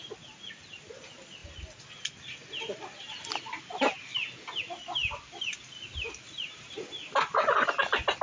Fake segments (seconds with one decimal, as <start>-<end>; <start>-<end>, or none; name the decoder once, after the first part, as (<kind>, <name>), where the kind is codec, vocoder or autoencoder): none